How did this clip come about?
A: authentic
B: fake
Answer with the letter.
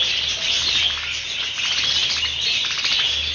A